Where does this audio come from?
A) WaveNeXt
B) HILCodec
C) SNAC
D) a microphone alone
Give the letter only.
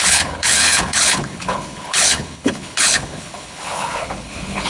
B